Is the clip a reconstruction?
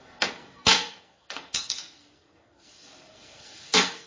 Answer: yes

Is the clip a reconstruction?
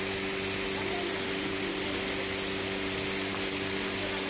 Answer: no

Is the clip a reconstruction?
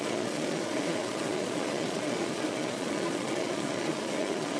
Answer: yes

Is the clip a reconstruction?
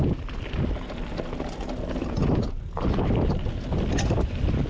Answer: no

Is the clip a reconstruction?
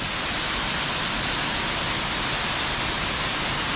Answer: no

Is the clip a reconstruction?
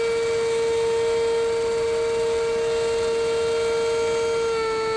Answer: no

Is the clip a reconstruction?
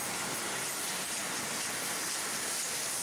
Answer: no